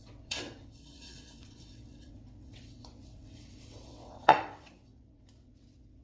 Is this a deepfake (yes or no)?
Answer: yes